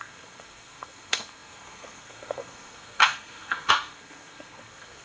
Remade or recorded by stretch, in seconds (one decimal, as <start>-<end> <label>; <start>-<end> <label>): 0.0-5.0 remade